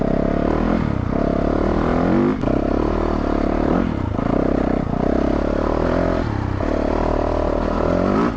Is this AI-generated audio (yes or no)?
no